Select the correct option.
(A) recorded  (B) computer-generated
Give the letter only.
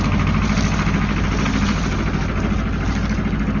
A